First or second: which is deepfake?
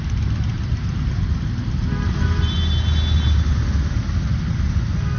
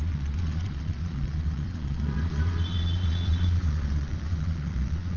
second